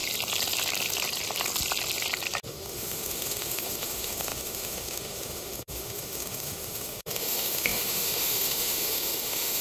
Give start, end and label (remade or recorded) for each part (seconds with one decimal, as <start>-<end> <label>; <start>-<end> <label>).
0.0-2.4 recorded; 2.4-9.6 remade